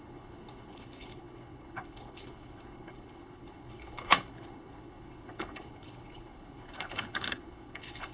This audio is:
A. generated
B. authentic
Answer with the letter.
A